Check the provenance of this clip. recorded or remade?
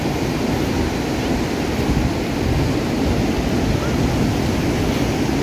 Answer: recorded